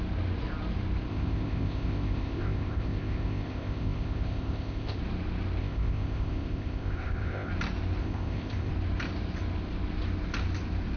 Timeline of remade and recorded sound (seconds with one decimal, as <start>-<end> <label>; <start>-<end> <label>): 0.0-1.1 recorded; 1.1-5.0 remade; 5.0-5.6 recorded; 5.6-7.5 remade; 7.5-8.0 recorded; 8.0-8.7 remade; 8.7-11.0 recorded